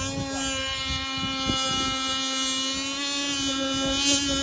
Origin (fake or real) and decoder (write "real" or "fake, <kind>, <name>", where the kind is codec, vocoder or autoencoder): real